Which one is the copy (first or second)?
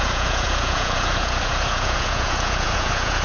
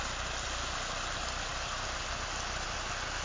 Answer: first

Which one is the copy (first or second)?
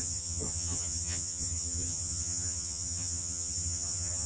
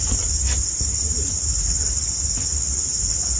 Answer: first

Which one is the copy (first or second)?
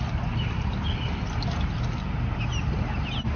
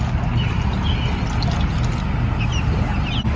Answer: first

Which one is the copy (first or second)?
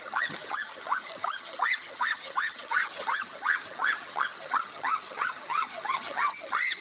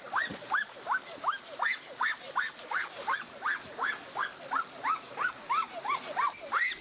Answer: first